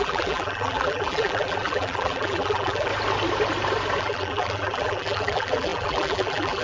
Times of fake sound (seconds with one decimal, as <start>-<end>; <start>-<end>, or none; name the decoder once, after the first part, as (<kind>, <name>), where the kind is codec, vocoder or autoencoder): 0.0-2.9 (vocoder, BigVGAN v2); 4.0-6.6